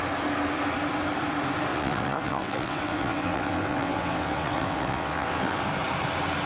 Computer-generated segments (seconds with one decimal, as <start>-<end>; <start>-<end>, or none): 1.7-5.6